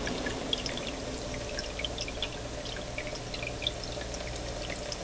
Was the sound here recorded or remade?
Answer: recorded